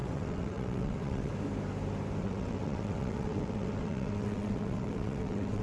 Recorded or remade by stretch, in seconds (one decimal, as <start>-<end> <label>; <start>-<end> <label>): 0.0-1.3 remade; 1.3-2.2 recorded; 2.2-5.6 remade